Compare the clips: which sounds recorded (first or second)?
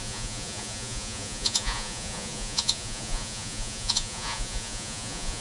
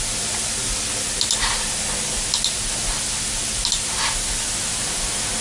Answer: second